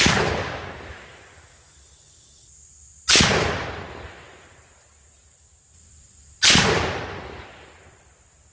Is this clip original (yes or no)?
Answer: yes